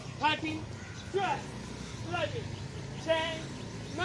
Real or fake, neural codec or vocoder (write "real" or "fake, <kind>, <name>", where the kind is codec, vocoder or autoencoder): real